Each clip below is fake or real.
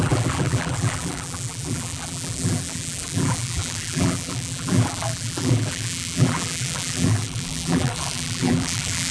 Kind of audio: fake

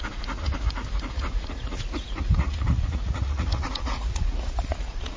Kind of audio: fake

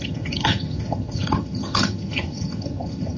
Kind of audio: fake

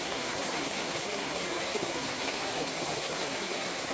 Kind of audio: fake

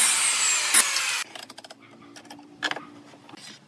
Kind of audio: real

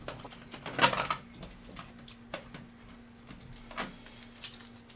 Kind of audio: real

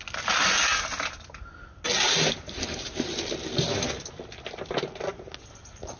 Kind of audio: real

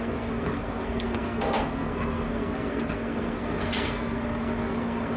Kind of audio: fake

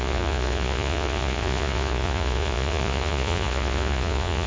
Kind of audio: fake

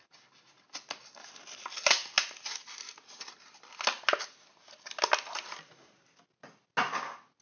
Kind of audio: real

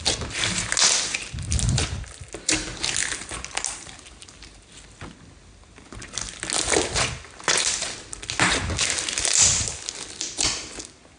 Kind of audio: real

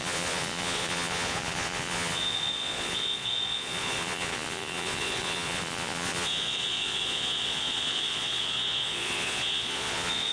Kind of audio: fake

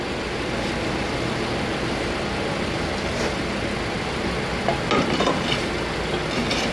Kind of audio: real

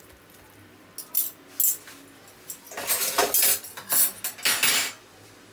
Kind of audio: real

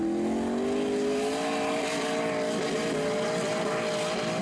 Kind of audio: real